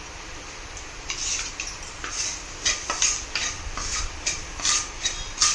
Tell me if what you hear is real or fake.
fake